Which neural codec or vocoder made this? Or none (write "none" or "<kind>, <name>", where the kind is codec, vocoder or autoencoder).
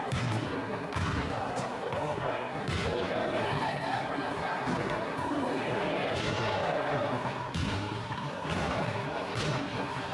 codec, SNAC